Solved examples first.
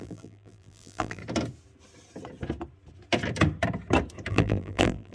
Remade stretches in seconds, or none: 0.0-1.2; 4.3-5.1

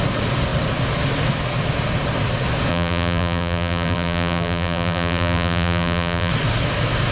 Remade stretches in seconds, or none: 2.7-6.3

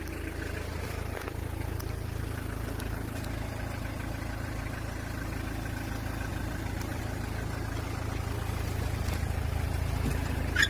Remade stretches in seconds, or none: 6.3-7.0

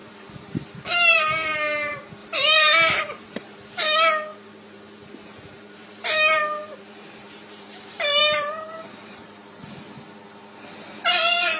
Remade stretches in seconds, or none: 0.0-1.2; 2.2-3.6; 4.3-9.4

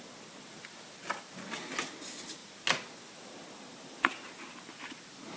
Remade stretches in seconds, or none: none

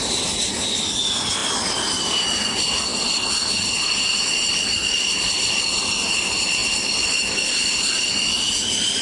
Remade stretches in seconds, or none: 2.9-5.6; 6.6-7.7

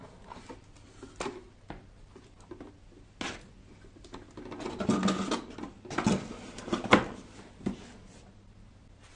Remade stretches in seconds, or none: none